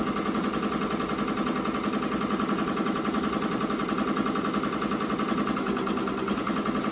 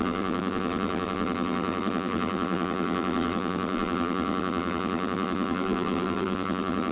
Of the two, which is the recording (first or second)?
first